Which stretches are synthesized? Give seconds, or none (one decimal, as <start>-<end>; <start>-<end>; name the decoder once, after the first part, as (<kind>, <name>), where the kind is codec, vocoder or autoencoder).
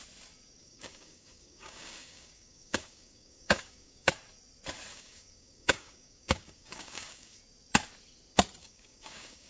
0.6-4.1 (codec, DAC); 4.9-7.4; 8.6-9.5